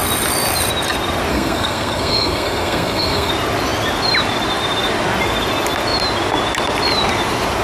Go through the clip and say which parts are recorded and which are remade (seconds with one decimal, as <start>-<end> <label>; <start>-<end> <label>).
0.0-1.3 recorded; 1.3-3.3 remade; 3.3-7.6 recorded